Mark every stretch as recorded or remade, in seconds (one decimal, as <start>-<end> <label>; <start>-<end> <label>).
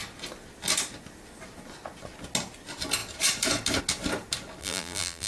0.0-4.6 recorded; 4.6-5.3 remade